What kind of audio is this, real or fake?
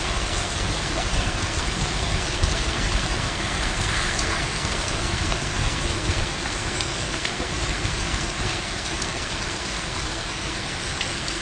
fake